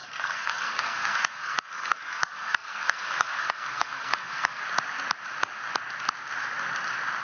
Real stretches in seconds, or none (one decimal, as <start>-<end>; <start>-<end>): 4.6-7.2